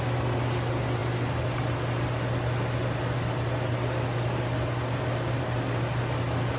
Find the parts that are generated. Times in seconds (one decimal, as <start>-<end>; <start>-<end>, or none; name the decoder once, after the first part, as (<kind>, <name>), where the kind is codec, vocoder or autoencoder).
none